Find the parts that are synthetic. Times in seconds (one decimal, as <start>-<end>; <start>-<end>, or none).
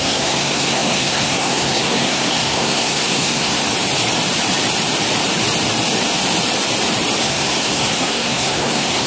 0.0-3.6; 7.2-9.1